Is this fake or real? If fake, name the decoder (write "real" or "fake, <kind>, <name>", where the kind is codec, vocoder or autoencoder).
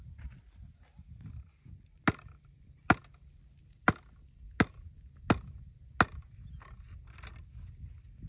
real